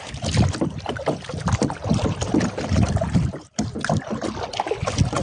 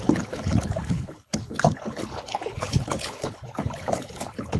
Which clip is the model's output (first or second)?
second